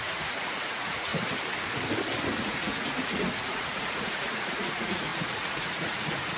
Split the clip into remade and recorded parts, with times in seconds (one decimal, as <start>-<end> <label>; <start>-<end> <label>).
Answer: 0.0-1.1 remade; 1.1-2.4 recorded; 2.4-6.4 remade